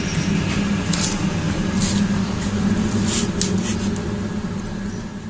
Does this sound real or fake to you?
real